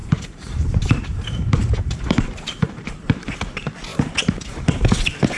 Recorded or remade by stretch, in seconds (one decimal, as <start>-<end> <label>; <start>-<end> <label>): 0.0-3.2 remade; 3.2-3.9 recorded; 3.9-4.5 remade; 4.5-5.4 recorded

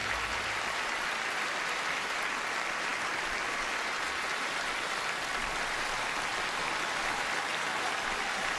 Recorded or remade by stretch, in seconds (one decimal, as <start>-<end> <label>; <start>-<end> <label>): 0.0-2.3 remade; 2.3-7.5 recorded; 7.5-8.6 remade

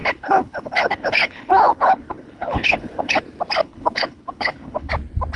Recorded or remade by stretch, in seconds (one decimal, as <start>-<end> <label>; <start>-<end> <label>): 0.0-3.2 remade; 3.2-3.6 recorded; 3.6-4.9 remade; 4.9-5.4 recorded

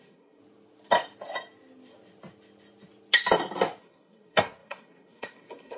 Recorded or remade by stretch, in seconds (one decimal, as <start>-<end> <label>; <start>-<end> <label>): 0.0-0.4 remade; 0.4-3.8 recorded; 3.8-5.8 remade

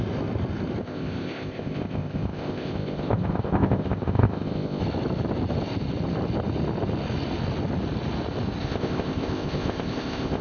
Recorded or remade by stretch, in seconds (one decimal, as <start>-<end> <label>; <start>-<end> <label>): 0.0-0.8 recorded; 0.8-4.8 remade; 4.8-8.6 recorded; 8.6-10.4 remade

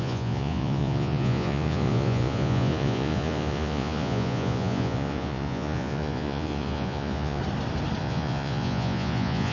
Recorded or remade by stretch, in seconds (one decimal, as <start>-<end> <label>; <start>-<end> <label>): 0.0-7.4 remade; 7.4-8.0 recorded; 8.0-9.5 remade

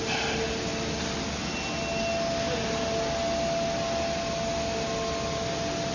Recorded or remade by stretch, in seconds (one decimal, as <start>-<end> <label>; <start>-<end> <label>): 0.0-5.9 recorded

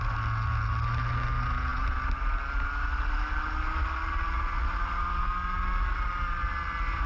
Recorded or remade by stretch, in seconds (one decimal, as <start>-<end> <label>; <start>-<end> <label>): 0.0-7.1 recorded